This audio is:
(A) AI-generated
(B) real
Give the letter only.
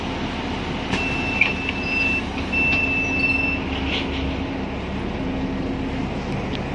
B